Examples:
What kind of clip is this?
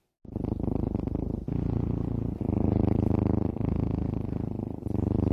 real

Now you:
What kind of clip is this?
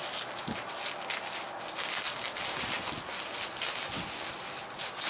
real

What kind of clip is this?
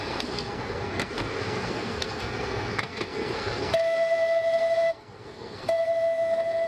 fake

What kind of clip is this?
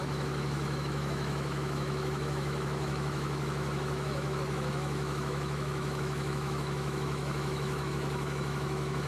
fake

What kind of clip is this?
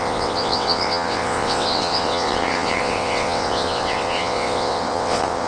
fake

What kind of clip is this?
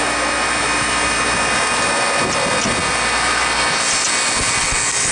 real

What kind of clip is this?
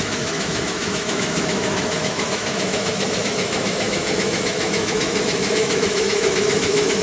fake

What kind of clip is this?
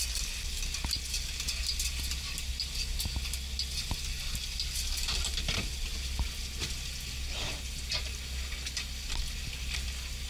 real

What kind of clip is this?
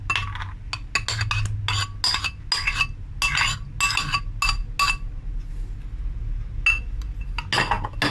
real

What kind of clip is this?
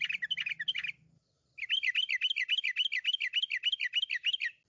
real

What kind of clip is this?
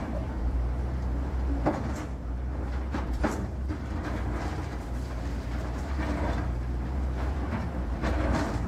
fake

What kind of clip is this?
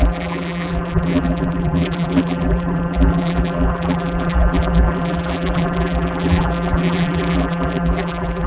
fake